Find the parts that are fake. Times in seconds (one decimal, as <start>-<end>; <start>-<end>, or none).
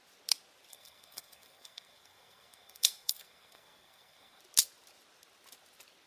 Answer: 0.7-4.4